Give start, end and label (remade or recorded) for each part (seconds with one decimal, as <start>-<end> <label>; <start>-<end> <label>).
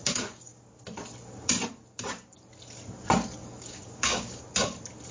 0.0-0.6 remade; 0.6-3.4 recorded; 3.4-4.4 remade; 4.4-5.1 recorded